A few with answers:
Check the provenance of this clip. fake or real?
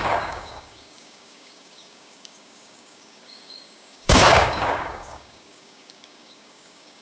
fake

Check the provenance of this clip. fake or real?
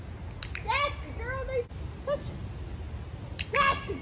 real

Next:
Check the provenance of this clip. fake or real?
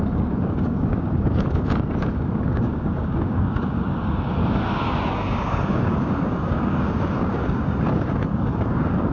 fake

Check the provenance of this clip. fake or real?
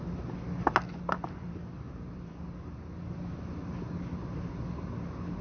real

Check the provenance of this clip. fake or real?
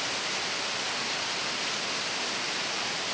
real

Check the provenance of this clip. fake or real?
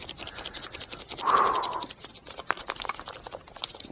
real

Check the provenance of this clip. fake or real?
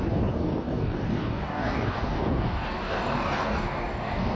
fake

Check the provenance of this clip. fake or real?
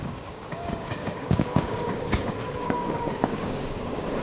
fake